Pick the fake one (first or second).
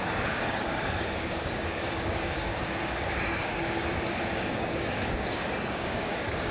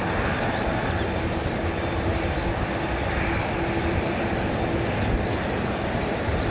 first